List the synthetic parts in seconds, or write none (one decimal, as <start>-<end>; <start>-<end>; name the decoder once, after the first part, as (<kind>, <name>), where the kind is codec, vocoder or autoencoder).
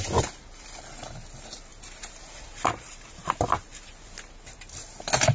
none